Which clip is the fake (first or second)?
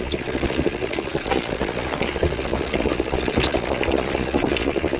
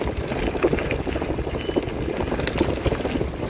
first